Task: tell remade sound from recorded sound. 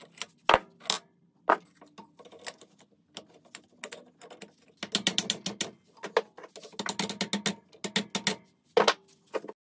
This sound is recorded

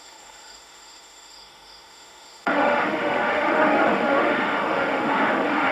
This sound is remade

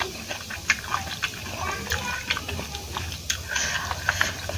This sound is recorded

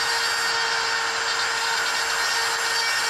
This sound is recorded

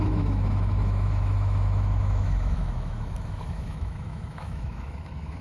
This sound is remade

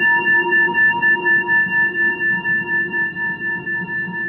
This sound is remade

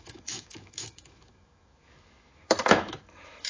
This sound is remade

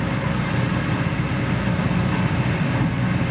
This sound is recorded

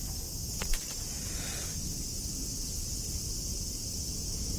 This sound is recorded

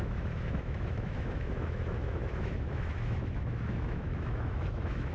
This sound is remade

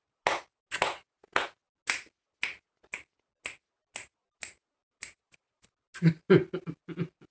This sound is recorded